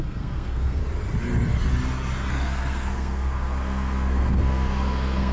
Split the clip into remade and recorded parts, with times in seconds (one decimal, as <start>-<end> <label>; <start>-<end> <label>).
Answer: 0.0-0.8 remade; 0.8-2.3 recorded; 2.3-5.3 remade